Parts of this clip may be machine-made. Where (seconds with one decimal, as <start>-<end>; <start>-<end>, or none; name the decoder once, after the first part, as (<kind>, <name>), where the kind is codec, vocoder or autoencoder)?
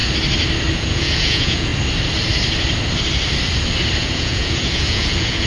0.7-1.7 (vocoder, Vocos); 4.0-5.5